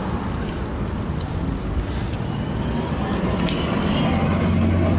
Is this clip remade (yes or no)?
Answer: no